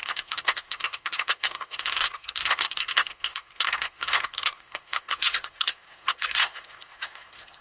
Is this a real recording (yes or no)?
no